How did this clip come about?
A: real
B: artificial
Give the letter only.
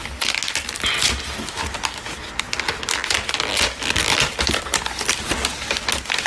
A